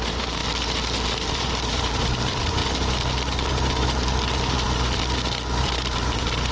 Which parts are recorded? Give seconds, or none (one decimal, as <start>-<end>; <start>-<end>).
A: 0.4-1.3; 2.6-5.6